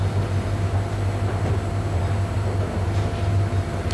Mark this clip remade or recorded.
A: recorded